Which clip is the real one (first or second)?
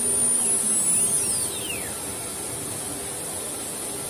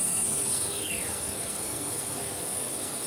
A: first